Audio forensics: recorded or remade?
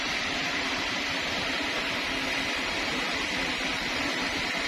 remade